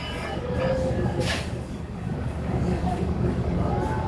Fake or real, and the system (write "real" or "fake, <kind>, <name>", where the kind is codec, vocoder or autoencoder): fake, codec, DAC